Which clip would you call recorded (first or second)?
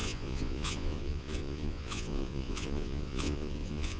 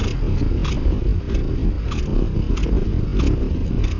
second